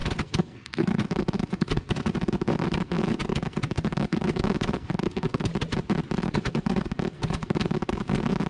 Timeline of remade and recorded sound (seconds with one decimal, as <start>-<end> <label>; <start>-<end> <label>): 0.0-5.5 remade; 5.5-6.2 recorded; 6.2-8.5 remade